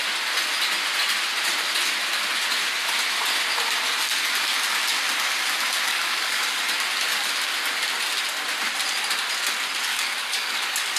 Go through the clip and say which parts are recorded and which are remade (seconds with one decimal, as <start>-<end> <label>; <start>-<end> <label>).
0.0-5.9 recorded; 5.9-6.6 remade; 6.6-9.9 recorded; 9.9-11.0 remade